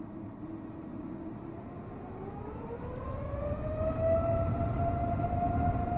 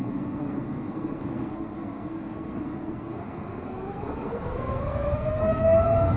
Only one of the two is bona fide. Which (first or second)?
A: first